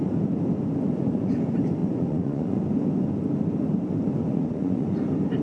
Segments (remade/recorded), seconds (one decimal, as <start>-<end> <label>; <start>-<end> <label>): 0.0-0.9 recorded; 0.9-1.4 remade; 1.4-1.8 recorded; 1.8-2.6 remade; 2.6-4.3 recorded; 4.3-5.0 remade; 5.0-5.4 recorded